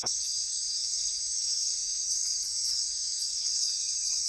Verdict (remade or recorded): remade